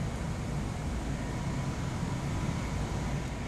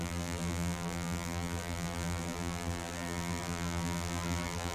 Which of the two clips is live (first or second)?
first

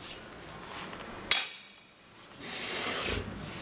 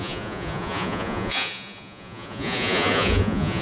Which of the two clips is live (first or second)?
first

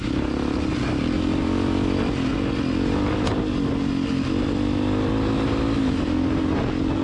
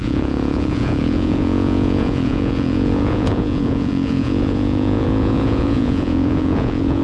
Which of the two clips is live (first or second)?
first